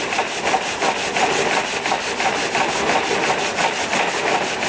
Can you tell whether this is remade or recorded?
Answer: recorded